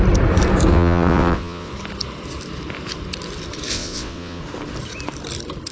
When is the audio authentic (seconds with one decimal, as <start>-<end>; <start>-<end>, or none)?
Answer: 0.0-0.7; 1.7-3.7; 4.4-5.7